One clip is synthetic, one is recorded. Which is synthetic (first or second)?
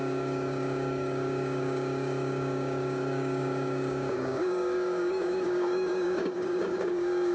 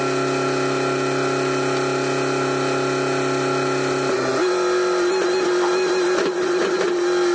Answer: first